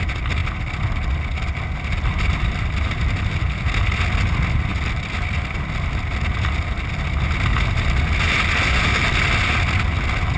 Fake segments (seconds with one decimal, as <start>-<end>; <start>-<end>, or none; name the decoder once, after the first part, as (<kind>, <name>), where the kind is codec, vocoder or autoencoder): none